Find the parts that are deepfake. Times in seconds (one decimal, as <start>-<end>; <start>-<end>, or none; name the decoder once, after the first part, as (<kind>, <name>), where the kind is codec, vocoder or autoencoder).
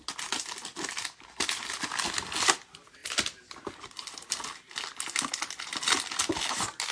3.0-4.3 (vocoder, BigVGAN v2)